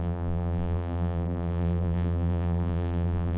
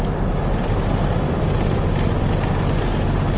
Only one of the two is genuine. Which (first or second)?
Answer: second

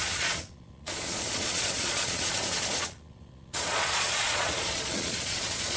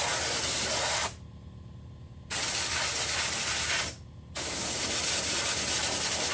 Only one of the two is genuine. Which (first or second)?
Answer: second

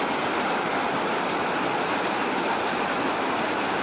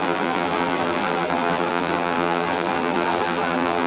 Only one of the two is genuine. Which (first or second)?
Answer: first